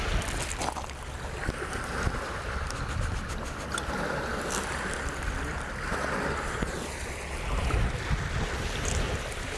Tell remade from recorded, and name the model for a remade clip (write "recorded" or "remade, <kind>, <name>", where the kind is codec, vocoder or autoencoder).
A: recorded